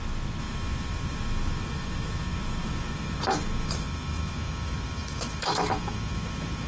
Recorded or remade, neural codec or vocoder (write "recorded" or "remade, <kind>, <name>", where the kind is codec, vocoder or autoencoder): remade, autoencoder, DAC-VAE